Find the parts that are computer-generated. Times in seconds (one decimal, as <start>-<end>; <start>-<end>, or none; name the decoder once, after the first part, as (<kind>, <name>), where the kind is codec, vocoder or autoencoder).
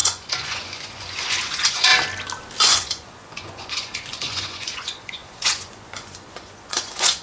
0.0-1.9 (vocoder, Vocos); 2.6-7.2